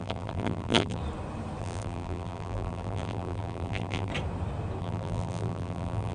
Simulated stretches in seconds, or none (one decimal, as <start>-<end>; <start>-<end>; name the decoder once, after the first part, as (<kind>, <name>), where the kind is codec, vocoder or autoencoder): 0.0-1.0 (vocoder, BigVGAN v2); 1.6-4.1; 4.8-6.1